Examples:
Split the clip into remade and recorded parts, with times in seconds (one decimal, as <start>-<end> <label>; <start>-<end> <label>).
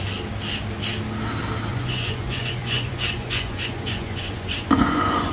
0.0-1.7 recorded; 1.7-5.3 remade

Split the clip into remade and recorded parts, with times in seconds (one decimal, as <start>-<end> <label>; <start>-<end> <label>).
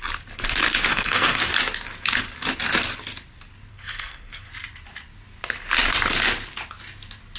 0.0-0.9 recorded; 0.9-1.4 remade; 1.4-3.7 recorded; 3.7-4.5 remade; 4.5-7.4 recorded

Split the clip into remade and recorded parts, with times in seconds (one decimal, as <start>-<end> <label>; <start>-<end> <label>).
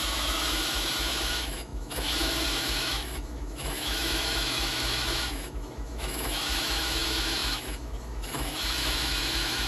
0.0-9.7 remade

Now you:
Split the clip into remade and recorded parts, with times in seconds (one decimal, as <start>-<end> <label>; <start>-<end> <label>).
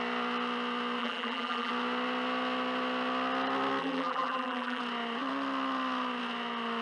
0.0-1.0 recorded; 1.0-1.7 remade; 1.7-3.8 recorded; 3.8-4.8 remade; 4.8-6.8 recorded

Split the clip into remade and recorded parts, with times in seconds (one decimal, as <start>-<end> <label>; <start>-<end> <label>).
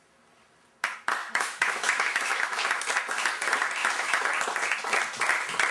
0.0-1.2 recorded; 1.2-2.8 remade; 2.8-3.8 recorded; 3.8-4.3 remade; 4.3-5.7 recorded